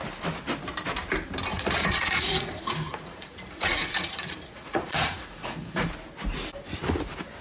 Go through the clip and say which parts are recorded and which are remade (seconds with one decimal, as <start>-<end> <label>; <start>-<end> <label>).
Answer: 0.0-1.5 recorded; 1.5-5.9 remade; 5.9-7.4 recorded